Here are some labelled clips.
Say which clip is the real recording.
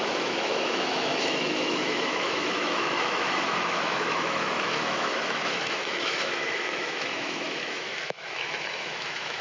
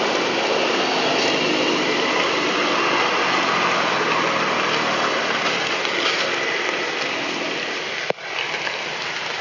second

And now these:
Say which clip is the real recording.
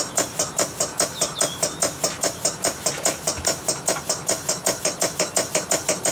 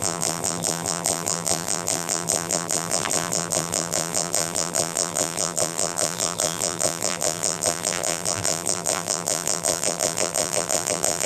first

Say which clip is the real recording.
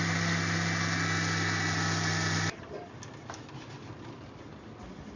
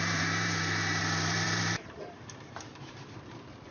first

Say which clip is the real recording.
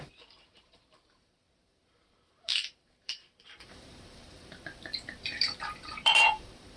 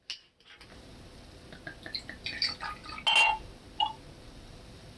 second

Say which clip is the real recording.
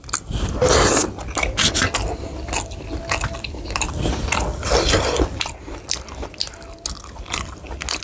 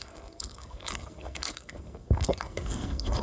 first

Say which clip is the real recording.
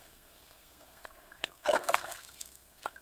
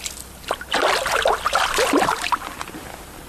second